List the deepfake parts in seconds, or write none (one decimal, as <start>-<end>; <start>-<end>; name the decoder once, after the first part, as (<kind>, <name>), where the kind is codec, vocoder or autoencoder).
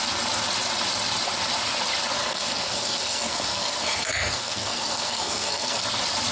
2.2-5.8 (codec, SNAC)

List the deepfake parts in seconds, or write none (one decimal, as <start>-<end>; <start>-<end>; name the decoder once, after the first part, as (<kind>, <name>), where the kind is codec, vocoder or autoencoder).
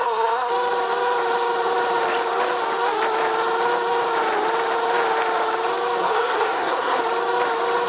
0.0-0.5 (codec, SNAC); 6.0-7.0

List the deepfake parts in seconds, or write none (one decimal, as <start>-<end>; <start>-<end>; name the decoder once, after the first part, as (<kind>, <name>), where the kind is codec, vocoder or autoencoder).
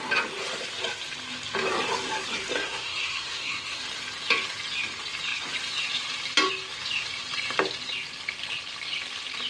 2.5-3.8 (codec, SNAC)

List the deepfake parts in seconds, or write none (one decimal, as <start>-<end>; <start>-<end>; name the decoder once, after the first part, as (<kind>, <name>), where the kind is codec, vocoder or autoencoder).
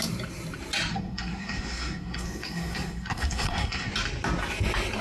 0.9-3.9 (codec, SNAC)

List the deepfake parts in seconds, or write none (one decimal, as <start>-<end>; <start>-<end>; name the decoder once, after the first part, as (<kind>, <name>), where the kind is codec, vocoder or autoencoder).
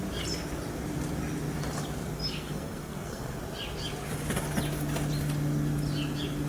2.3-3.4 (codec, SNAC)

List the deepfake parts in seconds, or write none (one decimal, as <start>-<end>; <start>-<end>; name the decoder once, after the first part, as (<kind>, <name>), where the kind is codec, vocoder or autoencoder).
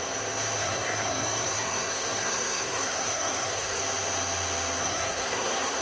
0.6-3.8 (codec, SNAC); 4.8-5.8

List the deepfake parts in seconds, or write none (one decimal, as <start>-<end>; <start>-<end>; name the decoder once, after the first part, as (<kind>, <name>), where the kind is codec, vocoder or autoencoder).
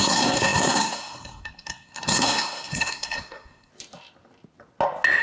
0.0-3.7 (codec, SNAC)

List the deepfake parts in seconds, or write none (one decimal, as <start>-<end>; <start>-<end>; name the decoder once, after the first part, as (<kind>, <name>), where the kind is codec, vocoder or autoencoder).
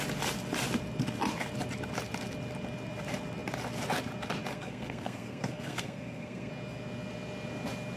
4.5-6.5 (codec, SNAC)